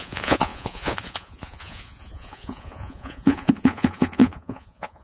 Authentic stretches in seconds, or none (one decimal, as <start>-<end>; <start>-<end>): none